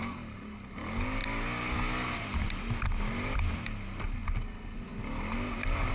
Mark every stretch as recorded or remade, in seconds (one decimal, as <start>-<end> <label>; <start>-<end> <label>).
0.0-5.9 recorded